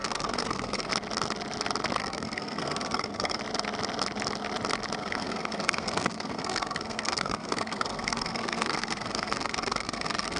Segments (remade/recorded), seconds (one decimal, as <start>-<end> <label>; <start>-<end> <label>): 0.0-0.9 remade; 0.9-2.0 recorded; 2.0-3.4 remade; 3.4-5.0 recorded; 5.0-10.4 remade